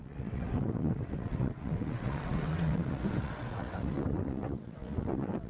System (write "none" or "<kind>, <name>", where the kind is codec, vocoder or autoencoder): vocoder, WaveNeXt